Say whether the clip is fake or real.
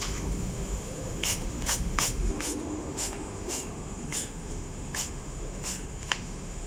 fake